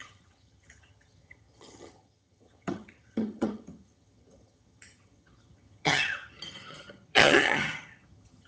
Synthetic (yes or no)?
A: yes